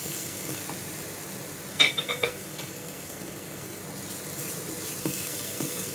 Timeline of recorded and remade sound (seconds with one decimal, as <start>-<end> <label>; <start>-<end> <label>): 0.0-0.6 remade; 0.6-1.7 recorded; 1.7-3.8 remade; 3.8-5.0 recorded; 5.0-5.9 remade